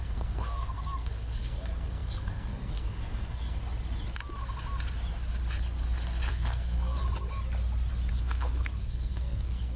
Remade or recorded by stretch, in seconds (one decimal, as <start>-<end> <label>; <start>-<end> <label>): 0.0-3.6 remade; 3.6-6.3 recorded; 6.3-7.0 remade; 7.0-8.1 recorded; 8.1-9.8 remade